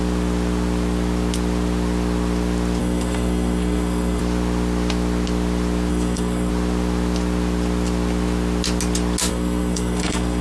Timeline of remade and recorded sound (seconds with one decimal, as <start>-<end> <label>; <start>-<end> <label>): 0.0-2.8 recorded; 2.8-4.2 remade; 4.2-5.9 recorded; 5.9-6.5 remade; 6.5-9.3 recorded; 9.3-10.4 remade